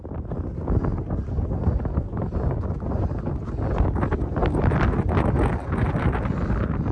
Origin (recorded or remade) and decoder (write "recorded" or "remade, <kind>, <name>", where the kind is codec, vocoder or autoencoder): recorded